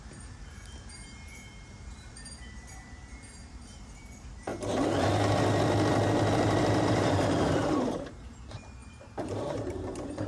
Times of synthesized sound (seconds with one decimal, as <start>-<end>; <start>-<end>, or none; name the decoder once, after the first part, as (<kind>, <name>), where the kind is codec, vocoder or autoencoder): 0.0-4.5 (vocoder, BigVGAN v2); 6.8-10.3